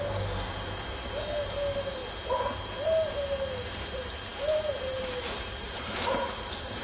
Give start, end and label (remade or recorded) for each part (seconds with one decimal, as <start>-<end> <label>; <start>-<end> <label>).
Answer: 0.0-2.0 remade; 2.0-3.1 recorded; 3.1-6.8 remade